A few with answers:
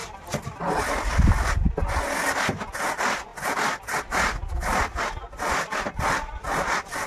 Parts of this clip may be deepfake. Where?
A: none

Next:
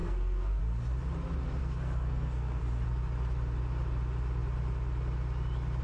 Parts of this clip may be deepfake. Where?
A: 0.0-0.6; 1.6-2.6

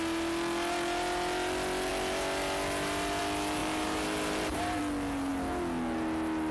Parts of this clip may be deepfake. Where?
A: 3.6-4.8

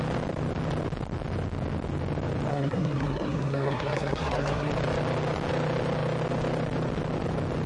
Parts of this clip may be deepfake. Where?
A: 2.5-4.7

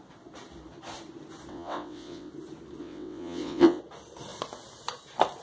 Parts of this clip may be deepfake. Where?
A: 1.5-2.3; 2.8-3.8

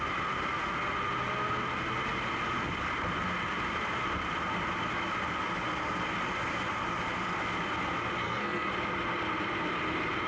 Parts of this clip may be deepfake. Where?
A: 8.2-8.7

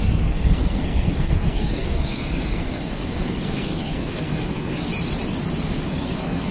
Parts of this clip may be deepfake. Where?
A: 0.0-4.9; 5.6-6.5

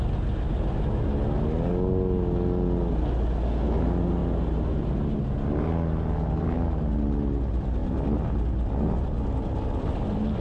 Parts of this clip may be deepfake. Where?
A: none